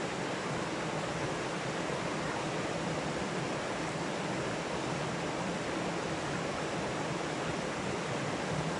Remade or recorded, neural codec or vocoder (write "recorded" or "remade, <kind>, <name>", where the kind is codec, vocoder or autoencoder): recorded